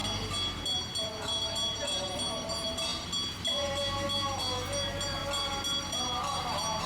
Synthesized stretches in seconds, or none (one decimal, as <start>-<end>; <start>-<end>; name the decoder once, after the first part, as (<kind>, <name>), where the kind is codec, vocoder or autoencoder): none

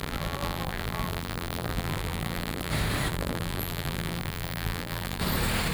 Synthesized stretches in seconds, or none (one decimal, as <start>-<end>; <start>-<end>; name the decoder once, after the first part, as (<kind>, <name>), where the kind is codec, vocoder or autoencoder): 0.0-2.7 (vocoder, BigVGAN v2); 3.1-5.2